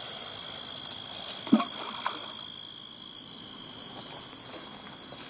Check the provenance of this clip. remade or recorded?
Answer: recorded